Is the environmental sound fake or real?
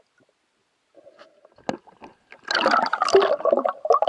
real